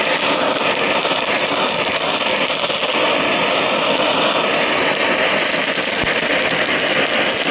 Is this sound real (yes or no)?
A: yes